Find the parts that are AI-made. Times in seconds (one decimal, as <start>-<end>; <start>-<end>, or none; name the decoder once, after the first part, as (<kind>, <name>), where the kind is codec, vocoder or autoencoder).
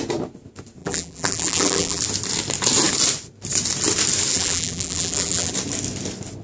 0.8-2.0 (vocoder, BigVGAN v2); 4.3-5.5